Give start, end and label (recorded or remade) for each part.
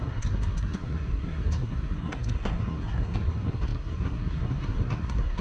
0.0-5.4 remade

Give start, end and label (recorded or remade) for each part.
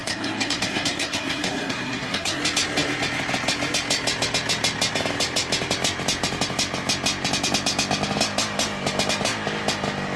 0.0-2.4 remade; 2.4-10.2 recorded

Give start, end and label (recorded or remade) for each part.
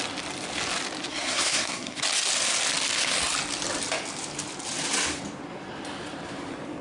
0.0-1.1 recorded; 1.1-2.0 remade; 2.0-6.8 recorded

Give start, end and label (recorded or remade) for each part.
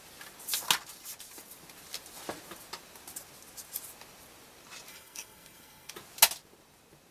0.0-4.9 recorded; 4.9-5.9 remade; 5.9-7.1 recorded